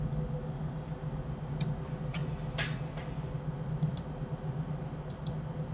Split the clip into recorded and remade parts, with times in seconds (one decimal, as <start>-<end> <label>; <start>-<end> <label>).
0.0-5.7 recorded